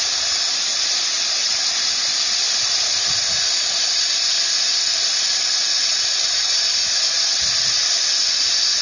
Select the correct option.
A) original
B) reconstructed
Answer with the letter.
A